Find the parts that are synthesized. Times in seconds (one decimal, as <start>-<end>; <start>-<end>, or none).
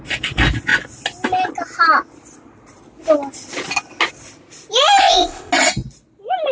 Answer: 5.0-5.5